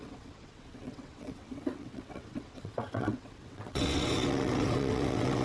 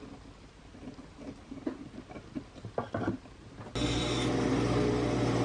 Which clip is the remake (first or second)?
first